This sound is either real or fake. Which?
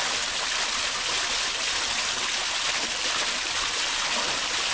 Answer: real